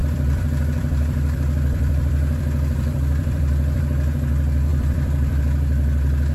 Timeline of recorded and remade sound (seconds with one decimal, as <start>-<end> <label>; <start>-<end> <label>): 0.0-3.8 remade; 3.8-4.7 recorded; 4.7-5.4 remade; 5.4-6.3 recorded